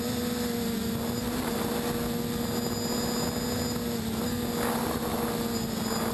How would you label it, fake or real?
real